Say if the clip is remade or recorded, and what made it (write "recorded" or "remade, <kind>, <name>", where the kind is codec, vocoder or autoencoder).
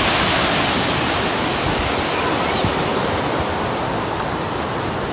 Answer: recorded